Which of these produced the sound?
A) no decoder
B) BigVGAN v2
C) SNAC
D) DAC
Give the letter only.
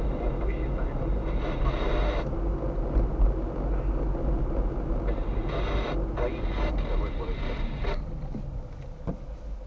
A